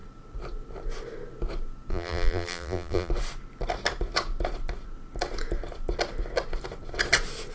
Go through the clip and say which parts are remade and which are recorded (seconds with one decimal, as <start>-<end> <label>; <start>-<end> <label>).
0.0-1.9 recorded; 1.9-3.1 remade; 3.1-7.5 recorded